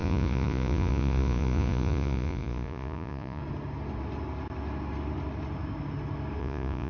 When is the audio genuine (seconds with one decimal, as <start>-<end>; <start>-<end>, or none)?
3.4-6.4